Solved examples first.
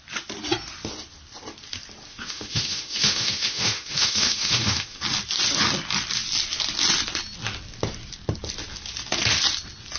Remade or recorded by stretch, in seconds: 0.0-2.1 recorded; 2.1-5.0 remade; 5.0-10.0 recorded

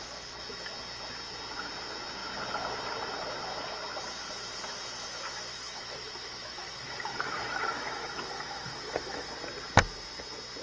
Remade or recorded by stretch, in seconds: 0.0-5.5 recorded; 5.5-9.3 remade; 9.3-10.6 recorded